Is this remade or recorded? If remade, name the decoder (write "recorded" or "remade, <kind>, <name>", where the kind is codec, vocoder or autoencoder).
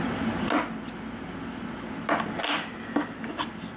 recorded